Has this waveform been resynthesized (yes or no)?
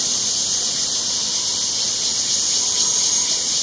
no